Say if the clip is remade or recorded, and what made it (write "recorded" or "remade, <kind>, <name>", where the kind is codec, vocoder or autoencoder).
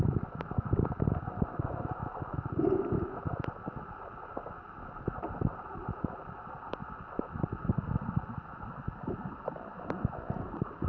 recorded